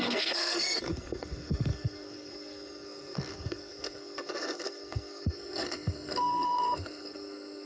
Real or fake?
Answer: fake